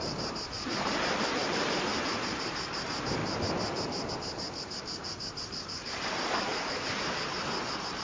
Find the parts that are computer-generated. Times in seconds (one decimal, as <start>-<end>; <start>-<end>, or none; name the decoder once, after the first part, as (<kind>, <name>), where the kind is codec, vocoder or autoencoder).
0.0-1.9 (vocoder, BigVGAN v2); 2.5-3.2; 4.1-8.0